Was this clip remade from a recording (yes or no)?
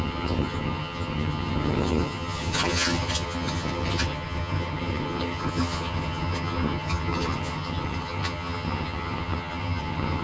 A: yes